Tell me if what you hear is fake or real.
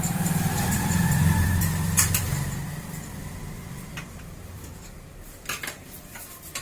fake